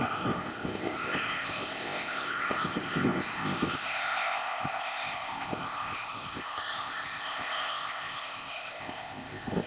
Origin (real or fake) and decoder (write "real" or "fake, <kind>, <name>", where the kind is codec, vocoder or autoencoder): fake, codec, ZipCodec